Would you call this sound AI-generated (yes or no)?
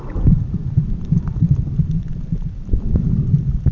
yes